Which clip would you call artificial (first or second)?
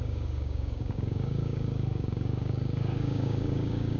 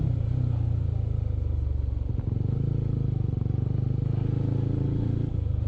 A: first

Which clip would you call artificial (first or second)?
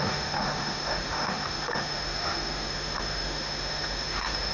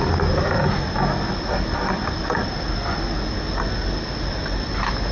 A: first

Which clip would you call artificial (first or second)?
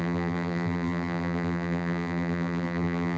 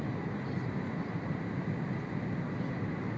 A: first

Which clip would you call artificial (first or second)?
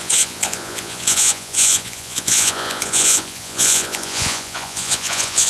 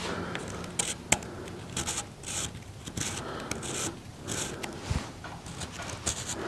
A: first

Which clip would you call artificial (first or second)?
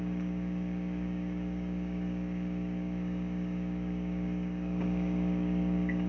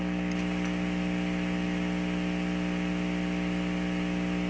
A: first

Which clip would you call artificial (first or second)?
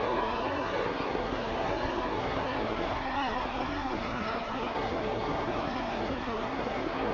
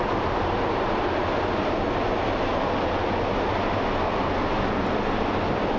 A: first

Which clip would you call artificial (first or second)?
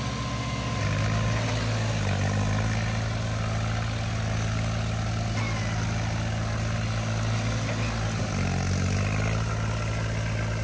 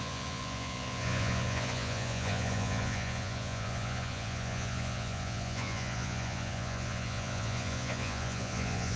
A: second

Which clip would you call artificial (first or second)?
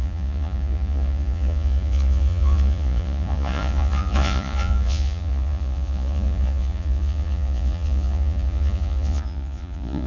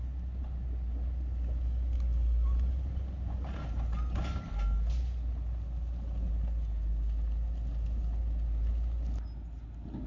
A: first